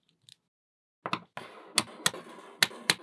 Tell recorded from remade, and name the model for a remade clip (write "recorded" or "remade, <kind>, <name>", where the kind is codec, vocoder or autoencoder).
recorded